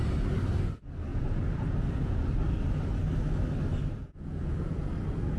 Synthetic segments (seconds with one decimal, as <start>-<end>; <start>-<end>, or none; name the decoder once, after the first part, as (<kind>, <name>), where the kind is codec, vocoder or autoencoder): 1.1-2.3 (vocoder, Vocos); 4.0-4.9